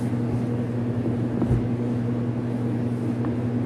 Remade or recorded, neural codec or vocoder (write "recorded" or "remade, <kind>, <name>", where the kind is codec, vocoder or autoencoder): recorded